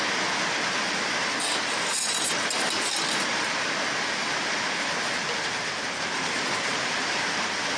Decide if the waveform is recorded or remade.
recorded